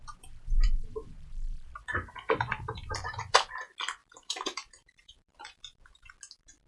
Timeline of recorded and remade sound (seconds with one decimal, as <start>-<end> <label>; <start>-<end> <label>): 0.0-3.5 remade; 3.5-4.0 recorded; 4.0-6.1 remade; 6.1-6.7 recorded